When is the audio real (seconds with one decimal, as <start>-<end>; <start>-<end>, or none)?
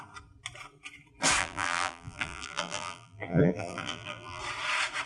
0.0-1.4; 4.4-5.1